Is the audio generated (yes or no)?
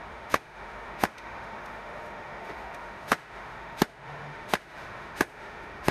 yes